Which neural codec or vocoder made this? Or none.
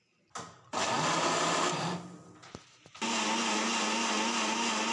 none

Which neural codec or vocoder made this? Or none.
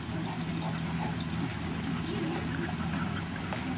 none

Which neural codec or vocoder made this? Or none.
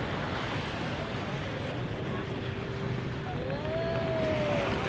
none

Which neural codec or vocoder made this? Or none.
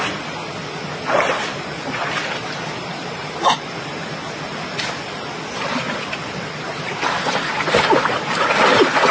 none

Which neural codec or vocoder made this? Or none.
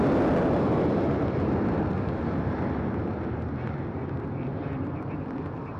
none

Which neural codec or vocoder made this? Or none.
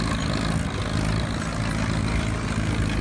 none